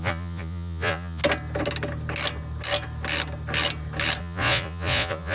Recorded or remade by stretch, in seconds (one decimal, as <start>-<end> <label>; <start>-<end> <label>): 0.0-1.2 remade; 1.2-4.2 recorded; 4.2-5.3 remade